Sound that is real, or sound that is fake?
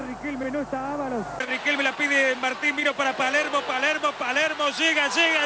real